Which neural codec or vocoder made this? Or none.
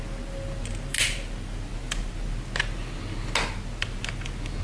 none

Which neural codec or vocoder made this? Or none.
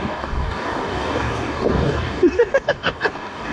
codec, DAC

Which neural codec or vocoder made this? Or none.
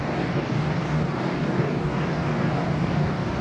codec, DAC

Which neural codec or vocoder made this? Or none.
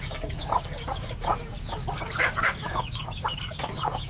codec, DAC